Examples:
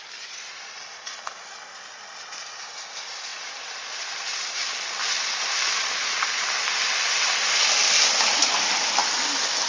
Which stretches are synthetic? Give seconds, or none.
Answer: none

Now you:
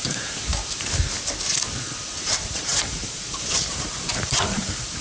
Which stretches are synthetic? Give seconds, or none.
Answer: 0.0-0.5; 2.2-5.0

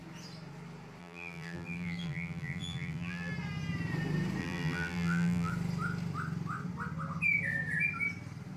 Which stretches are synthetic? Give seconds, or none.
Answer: 1.0-3.3; 4.4-5.5

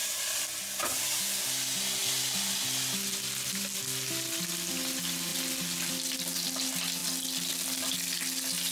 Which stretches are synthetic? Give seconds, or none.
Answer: none

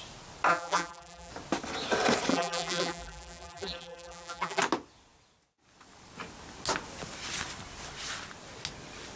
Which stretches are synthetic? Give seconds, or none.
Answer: 0.5-1.3; 2.3-4.6

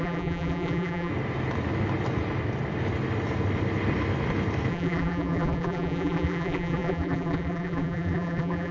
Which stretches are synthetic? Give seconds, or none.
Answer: 0.0-1.1; 4.7-8.7

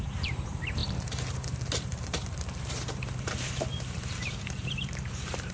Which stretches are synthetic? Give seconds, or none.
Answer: 0.0-5.5

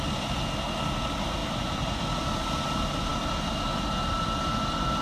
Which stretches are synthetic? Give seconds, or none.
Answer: 1.4-2.0